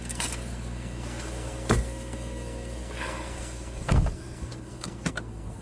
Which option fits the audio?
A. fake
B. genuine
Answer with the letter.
A